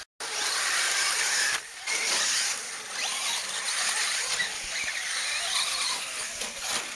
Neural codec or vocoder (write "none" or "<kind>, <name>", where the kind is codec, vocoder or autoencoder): none